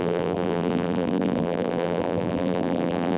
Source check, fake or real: fake